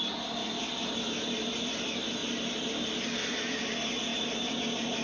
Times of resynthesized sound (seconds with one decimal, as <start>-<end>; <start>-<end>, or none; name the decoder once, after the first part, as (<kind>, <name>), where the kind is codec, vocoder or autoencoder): 0.4-1.0 (vocoder, BigVGAN v2); 2.2-3.6